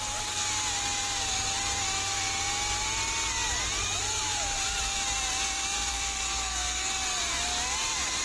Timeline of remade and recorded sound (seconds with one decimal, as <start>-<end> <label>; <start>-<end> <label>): 0.0-5.9 recorded; 5.9-6.9 remade; 6.9-8.2 recorded